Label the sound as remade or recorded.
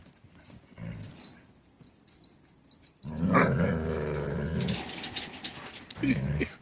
recorded